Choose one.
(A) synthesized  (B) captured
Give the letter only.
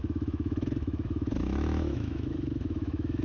A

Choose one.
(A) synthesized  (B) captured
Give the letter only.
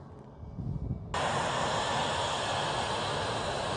B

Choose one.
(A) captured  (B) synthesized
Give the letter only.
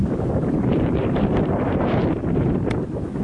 B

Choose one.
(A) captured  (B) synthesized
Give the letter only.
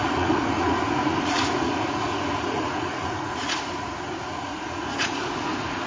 B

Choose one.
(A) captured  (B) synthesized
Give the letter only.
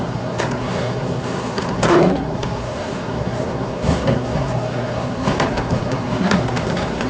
B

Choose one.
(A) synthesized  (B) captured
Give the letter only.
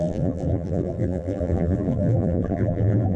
A